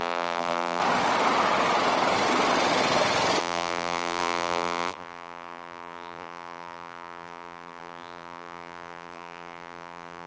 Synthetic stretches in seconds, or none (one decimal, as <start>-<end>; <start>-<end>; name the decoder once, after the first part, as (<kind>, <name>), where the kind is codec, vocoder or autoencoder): 0.0-0.8 (vocoder, BigVGAN v2); 3.4-10.3